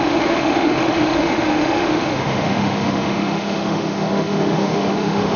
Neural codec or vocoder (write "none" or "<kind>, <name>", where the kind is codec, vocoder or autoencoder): autoencoder, DAC-VAE